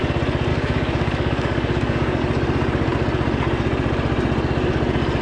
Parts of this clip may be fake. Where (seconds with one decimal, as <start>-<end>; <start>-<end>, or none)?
0.5-2.2